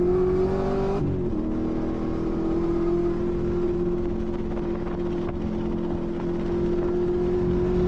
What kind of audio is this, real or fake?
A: real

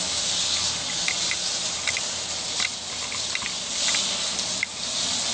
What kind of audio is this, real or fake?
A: real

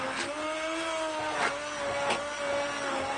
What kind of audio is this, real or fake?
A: real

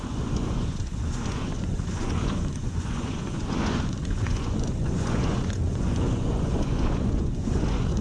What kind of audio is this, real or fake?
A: fake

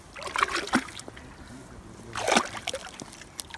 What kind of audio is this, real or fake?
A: real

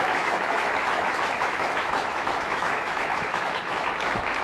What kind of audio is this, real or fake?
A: fake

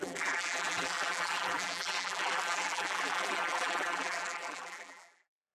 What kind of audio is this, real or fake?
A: fake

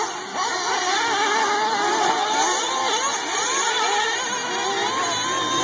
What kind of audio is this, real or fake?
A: real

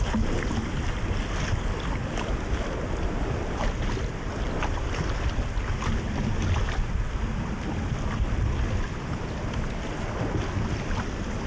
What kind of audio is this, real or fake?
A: real